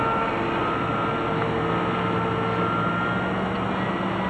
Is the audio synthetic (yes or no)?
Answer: no